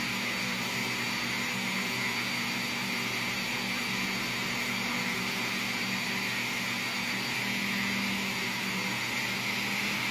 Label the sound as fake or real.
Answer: real